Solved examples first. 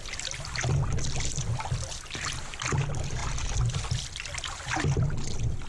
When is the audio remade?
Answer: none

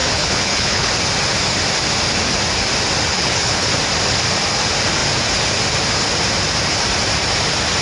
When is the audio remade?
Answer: 0.0-0.9 (codec, HILCodec); 3.1-3.7

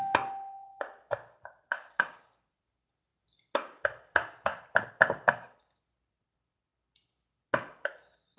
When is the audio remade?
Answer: none

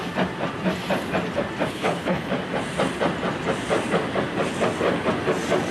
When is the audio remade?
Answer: 1.7-2.3 (codec, HILCodec)

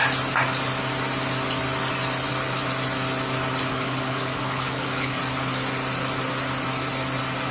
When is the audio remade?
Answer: 3.7-5.2 (codec, HILCodec)